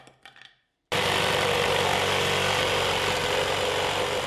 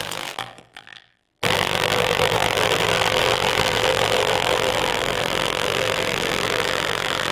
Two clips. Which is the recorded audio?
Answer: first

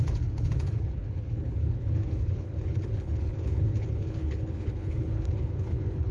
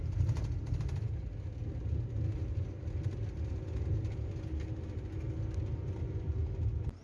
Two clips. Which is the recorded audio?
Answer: second